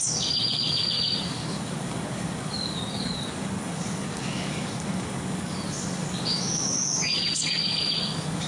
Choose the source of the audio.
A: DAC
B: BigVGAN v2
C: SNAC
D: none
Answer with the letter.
A